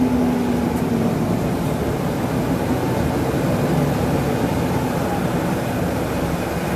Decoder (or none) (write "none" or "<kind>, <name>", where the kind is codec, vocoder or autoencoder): none